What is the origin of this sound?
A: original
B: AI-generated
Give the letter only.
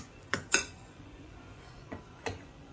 B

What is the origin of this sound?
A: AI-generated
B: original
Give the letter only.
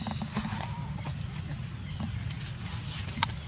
B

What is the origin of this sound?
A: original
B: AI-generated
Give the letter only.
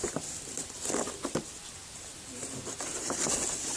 A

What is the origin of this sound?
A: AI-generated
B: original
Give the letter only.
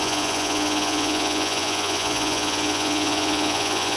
A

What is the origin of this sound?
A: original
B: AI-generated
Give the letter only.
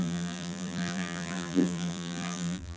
B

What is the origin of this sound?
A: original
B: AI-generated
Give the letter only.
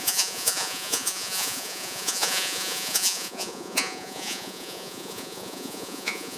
B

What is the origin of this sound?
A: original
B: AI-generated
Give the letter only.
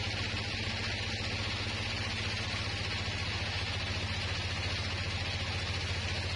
A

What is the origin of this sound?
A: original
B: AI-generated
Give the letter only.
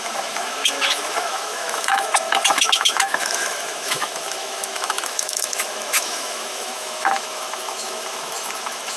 B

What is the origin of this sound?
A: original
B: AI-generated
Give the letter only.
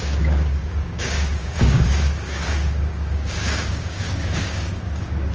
B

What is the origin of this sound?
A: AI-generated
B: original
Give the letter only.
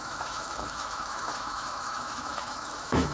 A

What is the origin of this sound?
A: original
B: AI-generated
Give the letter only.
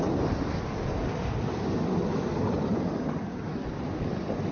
A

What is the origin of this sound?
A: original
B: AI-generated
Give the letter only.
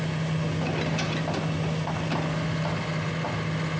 A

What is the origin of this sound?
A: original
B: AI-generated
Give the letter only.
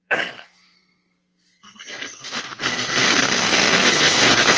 B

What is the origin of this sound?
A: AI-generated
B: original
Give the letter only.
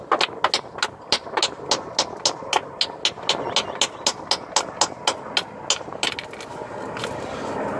B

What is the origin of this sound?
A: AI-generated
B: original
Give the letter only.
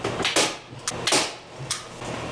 B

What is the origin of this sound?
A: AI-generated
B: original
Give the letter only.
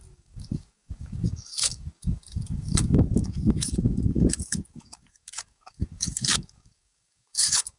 A